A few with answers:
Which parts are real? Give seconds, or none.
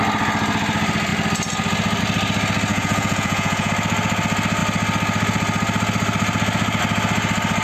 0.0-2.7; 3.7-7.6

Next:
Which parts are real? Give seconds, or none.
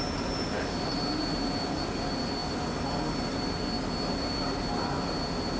0.0-5.6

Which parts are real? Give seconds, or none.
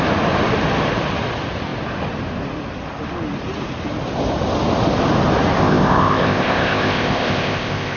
0.0-5.6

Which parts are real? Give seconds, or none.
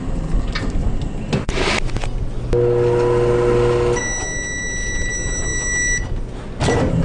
0.0-7.0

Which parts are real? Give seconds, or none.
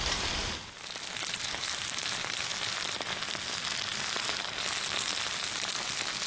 0.0-6.3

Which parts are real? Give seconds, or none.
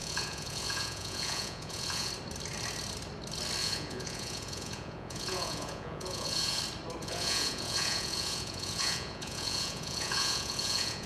2.1-3.6; 6.6-7.0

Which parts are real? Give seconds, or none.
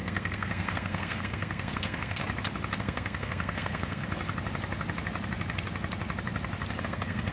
2.2-2.8; 4.0-6.8